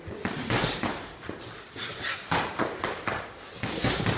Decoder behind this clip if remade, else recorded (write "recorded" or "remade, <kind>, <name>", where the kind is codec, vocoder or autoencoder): recorded